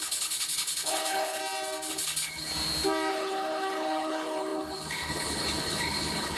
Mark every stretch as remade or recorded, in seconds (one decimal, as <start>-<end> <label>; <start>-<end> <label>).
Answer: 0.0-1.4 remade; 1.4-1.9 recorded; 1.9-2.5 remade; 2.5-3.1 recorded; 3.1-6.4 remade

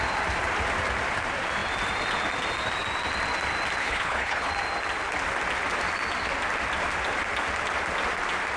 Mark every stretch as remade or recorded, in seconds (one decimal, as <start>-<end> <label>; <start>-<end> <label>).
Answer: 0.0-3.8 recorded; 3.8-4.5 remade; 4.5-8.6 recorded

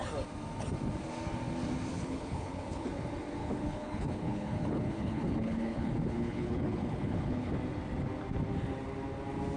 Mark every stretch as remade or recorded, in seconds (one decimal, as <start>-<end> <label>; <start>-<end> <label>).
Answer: 0.0-1.9 recorded; 1.9-2.9 remade; 2.9-3.4 recorded; 3.4-7.5 remade; 7.5-9.6 recorded

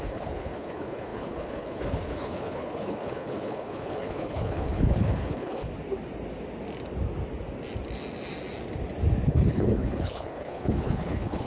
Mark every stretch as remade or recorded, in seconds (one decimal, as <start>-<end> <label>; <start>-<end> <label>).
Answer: 0.0-5.7 remade; 5.7-9.3 recorded; 9.3-11.5 remade

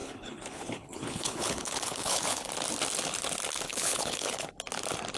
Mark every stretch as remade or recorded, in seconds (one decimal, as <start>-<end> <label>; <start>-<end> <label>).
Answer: 0.0-2.5 remade; 2.5-3.7 recorded; 3.7-4.5 remade; 4.5-5.2 recorded